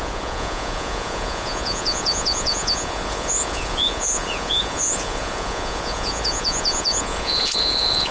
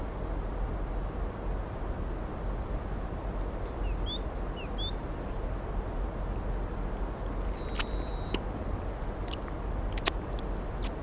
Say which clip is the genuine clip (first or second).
second